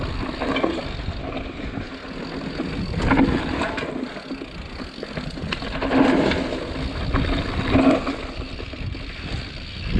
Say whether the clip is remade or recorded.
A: recorded